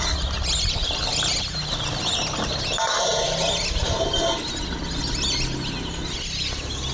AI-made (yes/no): no